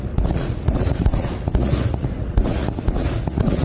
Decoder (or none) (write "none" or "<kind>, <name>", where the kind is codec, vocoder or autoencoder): vocoder, Vocos